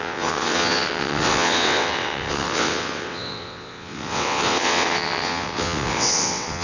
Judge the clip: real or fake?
fake